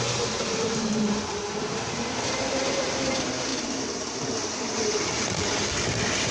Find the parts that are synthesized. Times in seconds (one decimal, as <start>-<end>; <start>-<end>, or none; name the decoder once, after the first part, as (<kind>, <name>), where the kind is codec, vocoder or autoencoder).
0.0-6.3 (vocoder, BigVGAN v2)